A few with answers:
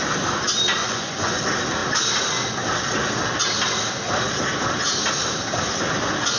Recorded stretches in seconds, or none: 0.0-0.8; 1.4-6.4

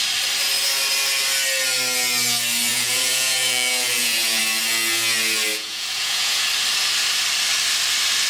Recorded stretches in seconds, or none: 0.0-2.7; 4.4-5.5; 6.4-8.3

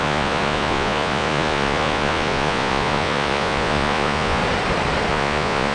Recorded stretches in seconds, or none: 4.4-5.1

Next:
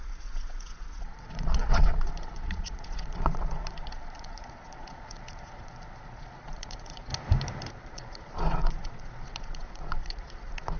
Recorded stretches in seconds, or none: 7.1-7.7

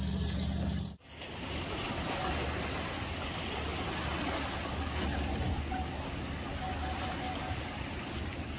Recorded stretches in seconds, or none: 0.0-8.6

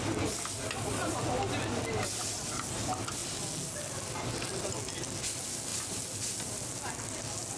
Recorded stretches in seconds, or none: 0.0-7.6